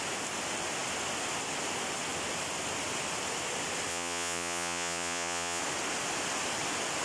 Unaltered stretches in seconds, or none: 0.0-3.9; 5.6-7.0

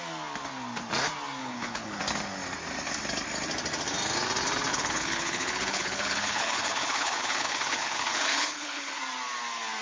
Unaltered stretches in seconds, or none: 0.0-1.4; 2.0-4.7; 9.0-9.8

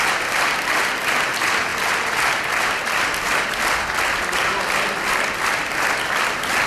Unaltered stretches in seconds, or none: 0.0-6.7

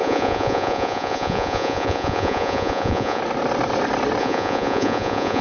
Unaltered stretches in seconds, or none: 3.2-4.2

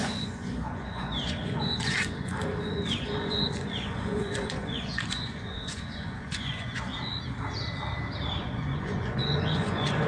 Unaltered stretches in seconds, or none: 6.9-8.4

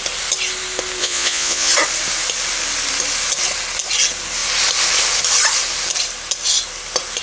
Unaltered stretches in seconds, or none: 0.0-1.0; 1.7-7.2

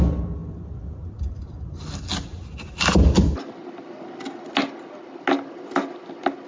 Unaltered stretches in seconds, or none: 0.0-6.5

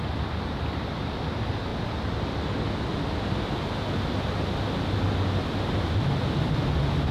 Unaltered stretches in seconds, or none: 0.0-7.1